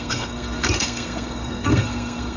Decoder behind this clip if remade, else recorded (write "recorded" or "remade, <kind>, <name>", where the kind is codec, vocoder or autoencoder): remade, codec, SNAC